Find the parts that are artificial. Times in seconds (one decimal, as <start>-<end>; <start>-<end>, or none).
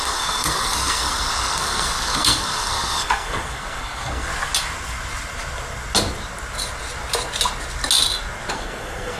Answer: 0.0-4.3; 8.5-9.2